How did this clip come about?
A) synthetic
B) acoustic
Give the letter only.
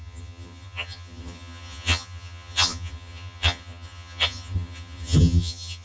A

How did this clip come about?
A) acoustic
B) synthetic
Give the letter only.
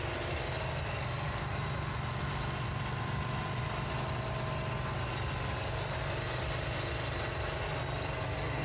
A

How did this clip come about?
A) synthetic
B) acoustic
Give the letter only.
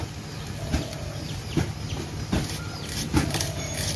B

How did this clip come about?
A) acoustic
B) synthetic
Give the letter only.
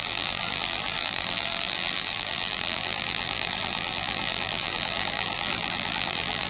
B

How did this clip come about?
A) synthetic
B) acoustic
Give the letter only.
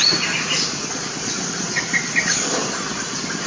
B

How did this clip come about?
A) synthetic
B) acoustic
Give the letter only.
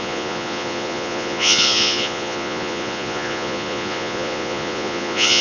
A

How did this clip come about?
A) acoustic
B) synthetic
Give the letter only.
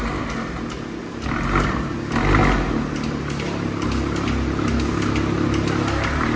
A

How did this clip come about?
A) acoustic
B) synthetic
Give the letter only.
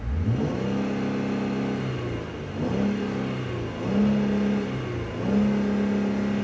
A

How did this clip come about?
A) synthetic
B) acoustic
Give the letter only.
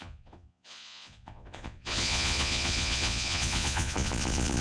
A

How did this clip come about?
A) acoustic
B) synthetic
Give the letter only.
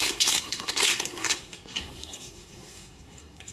B